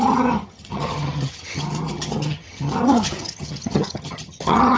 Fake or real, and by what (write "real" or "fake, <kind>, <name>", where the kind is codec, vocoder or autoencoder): fake, vocoder, HiFi-GAN